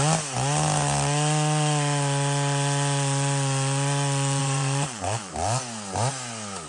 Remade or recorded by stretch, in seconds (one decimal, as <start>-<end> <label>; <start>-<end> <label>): 0.0-4.4 recorded; 4.4-5.3 remade; 5.3-6.7 recorded